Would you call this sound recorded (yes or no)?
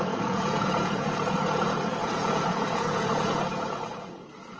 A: no